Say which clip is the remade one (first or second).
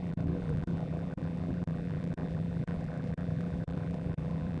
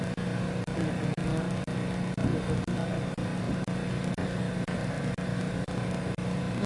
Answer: first